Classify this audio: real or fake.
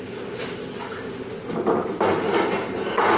real